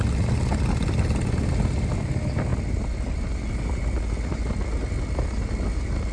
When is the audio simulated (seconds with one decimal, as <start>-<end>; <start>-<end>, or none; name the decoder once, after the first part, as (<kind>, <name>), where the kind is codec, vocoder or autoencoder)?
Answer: none